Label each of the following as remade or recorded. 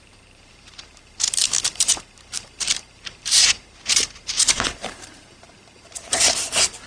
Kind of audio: remade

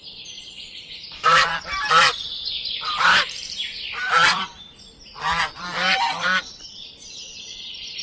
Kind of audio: remade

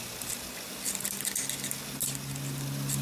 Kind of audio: recorded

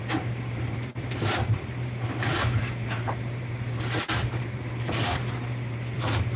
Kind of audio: remade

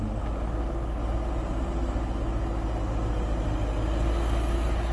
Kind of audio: recorded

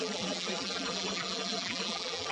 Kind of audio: remade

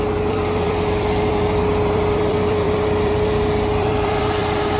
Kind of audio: remade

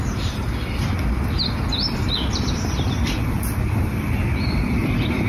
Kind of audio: remade